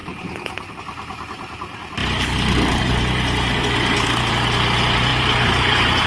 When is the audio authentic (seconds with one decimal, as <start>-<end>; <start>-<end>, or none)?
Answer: 0.7-5.1